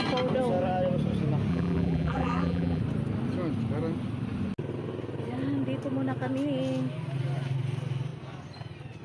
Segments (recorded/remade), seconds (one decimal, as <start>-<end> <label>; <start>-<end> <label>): 0.0-1.5 recorded; 1.5-2.8 remade; 2.8-9.0 recorded